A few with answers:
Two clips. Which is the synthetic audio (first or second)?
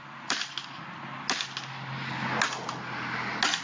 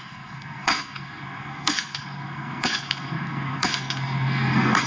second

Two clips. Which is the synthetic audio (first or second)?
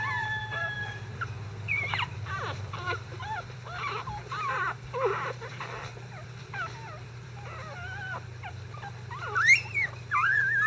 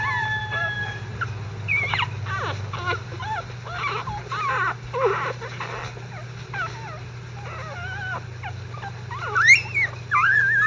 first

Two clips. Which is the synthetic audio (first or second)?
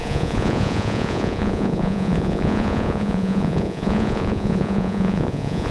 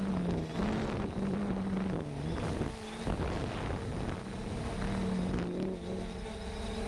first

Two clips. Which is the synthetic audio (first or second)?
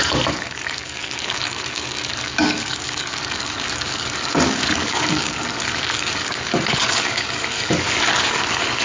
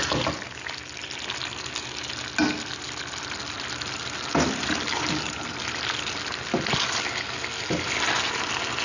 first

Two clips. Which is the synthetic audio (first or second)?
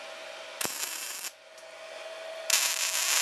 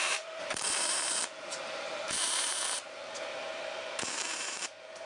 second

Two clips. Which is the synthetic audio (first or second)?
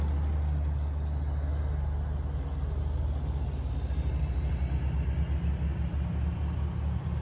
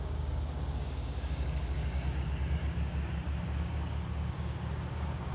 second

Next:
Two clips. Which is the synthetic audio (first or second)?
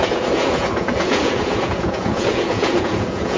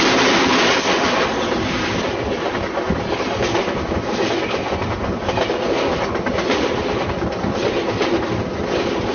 first